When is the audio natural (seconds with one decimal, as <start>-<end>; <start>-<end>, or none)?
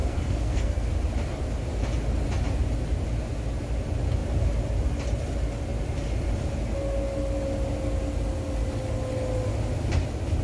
0.9-10.4